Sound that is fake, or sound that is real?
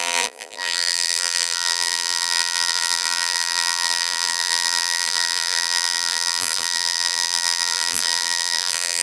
fake